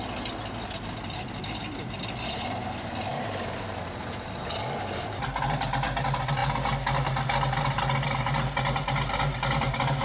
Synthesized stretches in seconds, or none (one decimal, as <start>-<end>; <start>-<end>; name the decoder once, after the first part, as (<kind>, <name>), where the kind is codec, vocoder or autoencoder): none